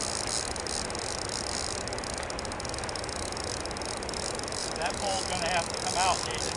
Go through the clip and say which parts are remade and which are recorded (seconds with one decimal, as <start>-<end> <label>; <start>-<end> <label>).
0.0-4.6 recorded; 4.6-5.2 remade; 5.2-6.6 recorded